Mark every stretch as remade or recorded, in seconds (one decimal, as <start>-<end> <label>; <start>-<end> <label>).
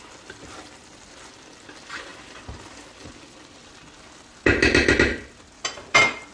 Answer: 0.0-6.3 recorded